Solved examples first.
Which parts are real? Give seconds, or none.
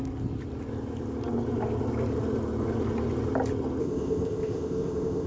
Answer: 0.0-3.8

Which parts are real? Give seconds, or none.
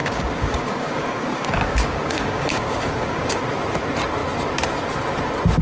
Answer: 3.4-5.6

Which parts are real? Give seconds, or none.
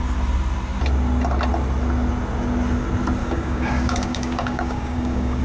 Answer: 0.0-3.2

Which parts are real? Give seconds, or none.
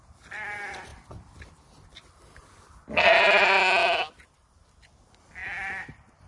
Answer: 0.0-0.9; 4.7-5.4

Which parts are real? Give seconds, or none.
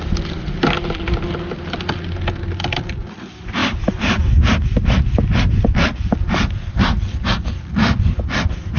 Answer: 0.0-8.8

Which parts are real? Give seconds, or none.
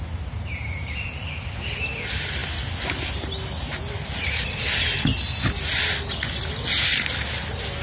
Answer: 0.0-7.8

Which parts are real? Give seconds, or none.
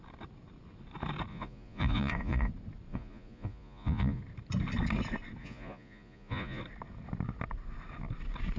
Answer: 0.0-1.3; 2.5-2.9; 4.2-5.4; 6.6-8.6